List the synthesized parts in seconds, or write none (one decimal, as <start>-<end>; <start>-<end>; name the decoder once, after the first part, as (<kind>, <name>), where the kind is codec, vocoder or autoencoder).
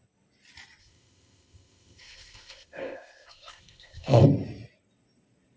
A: 0.8-4.2 (codec, ZipCodec)